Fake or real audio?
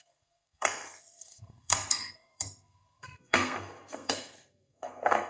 fake